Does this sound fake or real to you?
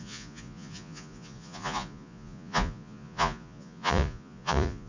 fake